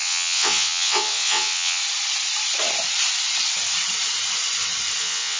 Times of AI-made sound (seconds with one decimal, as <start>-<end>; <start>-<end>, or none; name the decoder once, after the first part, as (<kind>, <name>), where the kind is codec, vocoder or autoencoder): 0.0-1.8 (vocoder, WaveNeXt); 5.0-5.4